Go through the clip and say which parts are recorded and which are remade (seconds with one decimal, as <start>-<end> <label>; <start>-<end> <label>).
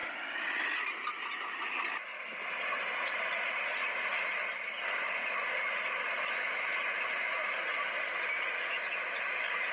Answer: 0.0-2.4 recorded; 2.4-4.3 remade; 4.3-6.5 recorded; 6.5-9.7 remade